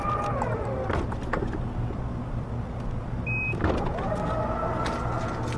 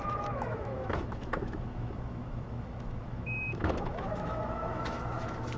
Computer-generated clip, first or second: second